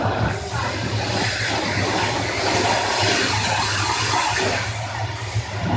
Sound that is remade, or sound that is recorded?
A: recorded